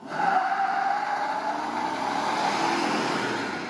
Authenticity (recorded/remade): recorded